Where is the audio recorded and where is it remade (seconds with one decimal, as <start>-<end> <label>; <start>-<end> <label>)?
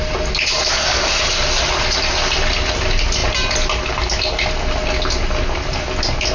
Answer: 0.0-6.3 recorded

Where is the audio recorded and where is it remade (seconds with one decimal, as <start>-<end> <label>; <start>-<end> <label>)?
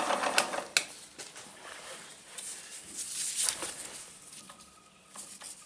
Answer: 0.0-5.7 recorded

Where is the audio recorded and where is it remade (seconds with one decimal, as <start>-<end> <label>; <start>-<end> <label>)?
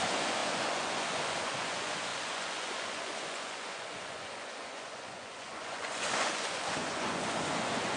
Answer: 0.0-8.0 remade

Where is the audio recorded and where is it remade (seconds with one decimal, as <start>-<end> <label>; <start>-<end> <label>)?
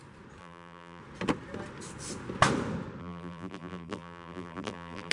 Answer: 0.0-0.4 recorded; 0.4-1.0 remade; 1.0-3.0 recorded; 3.0-5.1 remade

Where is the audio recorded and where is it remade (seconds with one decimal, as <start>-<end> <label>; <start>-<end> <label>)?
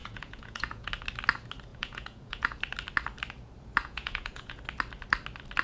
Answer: 0.0-0.9 remade; 0.9-1.7 recorded; 1.7-2.6 remade; 2.6-3.8 recorded; 3.8-4.6 remade; 4.6-5.6 recorded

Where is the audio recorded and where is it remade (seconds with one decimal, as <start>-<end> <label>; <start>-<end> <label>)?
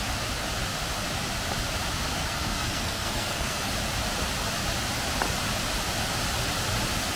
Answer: 0.0-2.2 recorded; 2.2-3.7 remade; 3.7-7.2 recorded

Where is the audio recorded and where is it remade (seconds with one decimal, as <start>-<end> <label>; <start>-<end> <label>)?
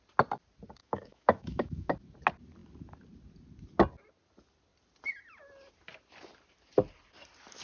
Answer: 0.0-0.8 recorded; 0.8-1.9 remade; 1.9-7.6 recorded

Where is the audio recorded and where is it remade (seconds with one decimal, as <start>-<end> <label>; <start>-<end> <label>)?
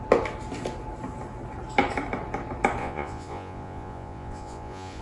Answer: 0.0-2.8 recorded; 2.8-5.0 remade